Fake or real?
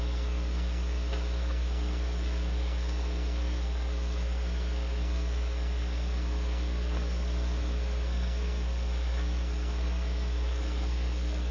fake